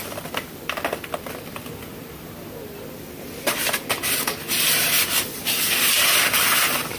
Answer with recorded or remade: recorded